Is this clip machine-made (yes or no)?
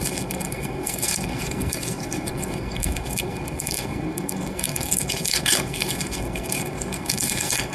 yes